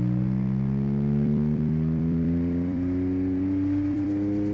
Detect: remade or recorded remade